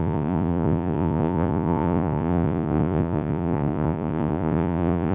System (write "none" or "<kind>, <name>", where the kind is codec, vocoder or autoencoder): vocoder, Vocos